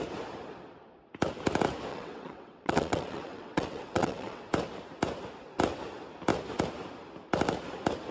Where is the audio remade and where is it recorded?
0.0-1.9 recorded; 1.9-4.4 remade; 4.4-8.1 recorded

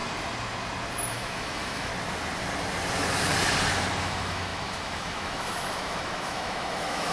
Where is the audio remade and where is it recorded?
0.0-1.1 recorded; 1.1-1.9 remade; 1.9-4.0 recorded; 4.0-7.1 remade

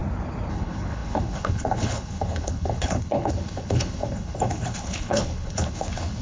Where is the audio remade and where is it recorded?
0.0-0.5 recorded; 0.5-6.2 remade

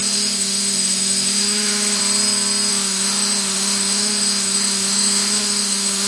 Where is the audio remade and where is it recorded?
0.0-2.0 remade; 2.0-2.7 recorded; 2.7-6.1 remade

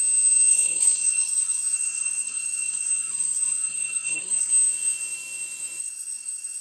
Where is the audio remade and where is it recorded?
0.0-0.5 recorded; 0.5-4.5 remade; 4.5-5.8 recorded; 5.8-6.6 remade

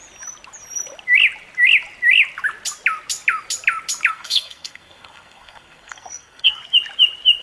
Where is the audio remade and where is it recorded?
0.0-4.1 recorded; 4.1-6.6 remade; 6.6-7.4 recorded

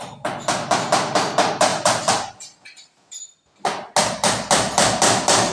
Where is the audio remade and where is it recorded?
0.0-5.5 recorded